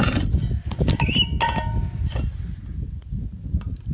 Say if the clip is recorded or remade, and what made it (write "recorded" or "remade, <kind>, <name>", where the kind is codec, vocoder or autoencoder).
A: recorded